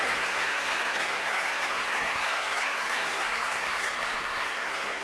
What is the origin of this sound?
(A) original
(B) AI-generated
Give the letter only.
B